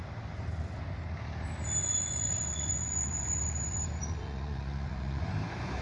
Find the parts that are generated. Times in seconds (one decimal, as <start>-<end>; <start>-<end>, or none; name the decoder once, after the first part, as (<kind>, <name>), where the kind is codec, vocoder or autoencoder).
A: 1.8-5.3 (vocoder, Vocos)